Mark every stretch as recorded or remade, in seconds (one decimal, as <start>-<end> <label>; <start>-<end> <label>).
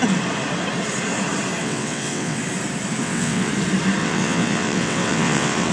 0.0-1.6 recorded; 1.6-2.4 remade; 2.4-3.0 recorded; 3.0-3.5 remade; 3.5-4.0 recorded; 4.0-5.7 remade